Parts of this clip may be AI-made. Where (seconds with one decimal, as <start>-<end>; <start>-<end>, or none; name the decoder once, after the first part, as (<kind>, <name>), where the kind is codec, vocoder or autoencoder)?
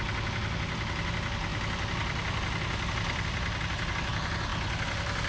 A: none